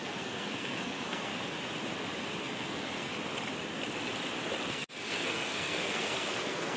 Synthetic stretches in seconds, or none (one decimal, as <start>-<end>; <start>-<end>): 0.0-1.3; 2.4-3.1; 4.7-6.8